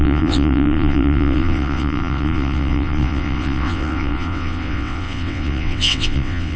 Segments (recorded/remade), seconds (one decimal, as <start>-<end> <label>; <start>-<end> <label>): 0.0-6.6 remade